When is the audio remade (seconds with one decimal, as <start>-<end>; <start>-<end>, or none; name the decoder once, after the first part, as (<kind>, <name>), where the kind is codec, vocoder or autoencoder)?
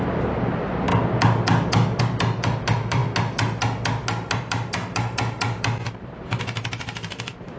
0.0-0.9 (vocoder, BigVGAN v2); 2.0-3.0; 4.4-7.6